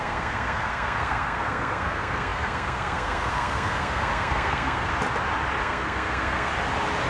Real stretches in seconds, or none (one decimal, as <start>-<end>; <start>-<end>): 4.9-5.6; 6.5-7.1